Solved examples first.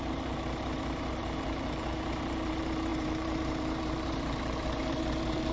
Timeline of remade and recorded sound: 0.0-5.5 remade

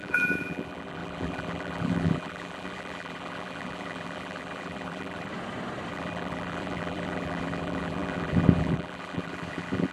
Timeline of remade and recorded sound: 0.0-5.3 remade; 5.3-5.9 recorded; 5.9-9.9 remade

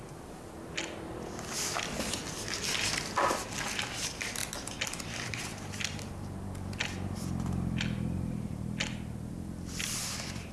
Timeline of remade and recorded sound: 0.0-4.4 remade; 4.4-5.0 recorded; 5.0-5.5 remade; 5.5-9.3 recorded; 9.3-10.5 remade

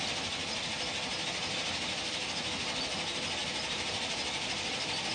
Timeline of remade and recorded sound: 0.0-1.1 recorded; 1.1-2.5 remade; 2.5-3.4 recorded; 3.4-5.1 remade